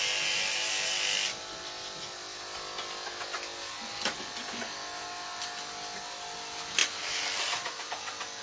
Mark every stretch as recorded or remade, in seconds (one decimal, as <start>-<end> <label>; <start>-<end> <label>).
0.0-8.4 recorded